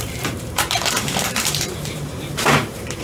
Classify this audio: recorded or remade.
remade